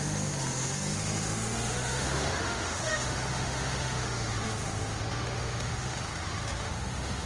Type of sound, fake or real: fake